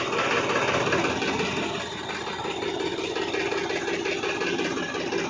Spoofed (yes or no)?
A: no